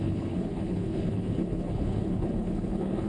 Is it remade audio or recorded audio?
remade